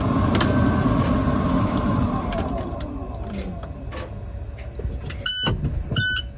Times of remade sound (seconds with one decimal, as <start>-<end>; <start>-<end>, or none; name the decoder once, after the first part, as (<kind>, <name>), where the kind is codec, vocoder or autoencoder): 1.2-3.9 (vocoder, BigVGAN v2)